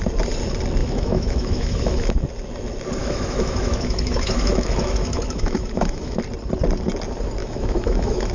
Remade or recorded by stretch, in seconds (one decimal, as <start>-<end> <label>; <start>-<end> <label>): 0.0-0.8 recorded; 0.8-2.2 remade; 2.2-3.0 recorded; 3.0-6.2 remade; 6.2-7.4 recorded; 7.4-8.3 remade